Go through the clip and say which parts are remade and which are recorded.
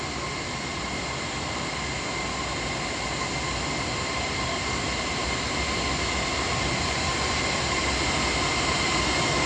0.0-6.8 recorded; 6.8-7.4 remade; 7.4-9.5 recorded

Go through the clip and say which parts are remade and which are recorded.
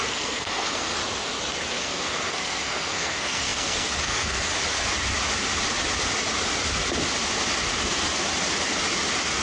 0.0-1.0 remade; 1.0-1.7 recorded; 1.7-4.5 remade; 4.5-9.4 recorded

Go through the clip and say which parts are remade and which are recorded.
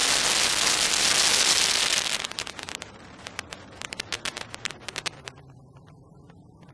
0.0-2.2 recorded; 2.2-6.7 remade